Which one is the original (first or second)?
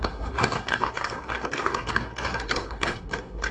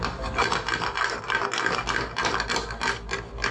second